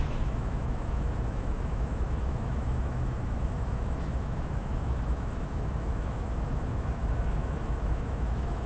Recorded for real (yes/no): no